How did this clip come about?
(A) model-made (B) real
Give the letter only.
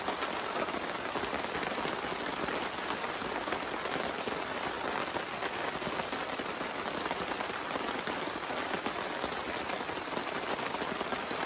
B